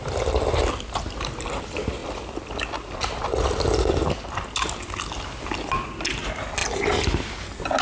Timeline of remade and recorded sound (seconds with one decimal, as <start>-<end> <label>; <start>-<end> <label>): 0.0-7.8 recorded